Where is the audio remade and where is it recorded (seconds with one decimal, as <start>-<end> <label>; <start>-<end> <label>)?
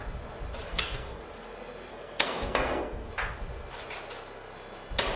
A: 0.0-0.7 recorded; 0.7-1.2 remade; 1.2-1.9 recorded; 1.9-3.1 remade; 3.1-5.2 recorded